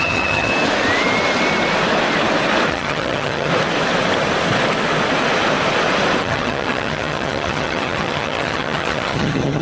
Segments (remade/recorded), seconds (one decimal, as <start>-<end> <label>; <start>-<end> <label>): 0.0-0.5 remade; 0.5-2.7 recorded; 2.7-3.5 remade; 3.5-6.2 recorded; 6.2-9.6 remade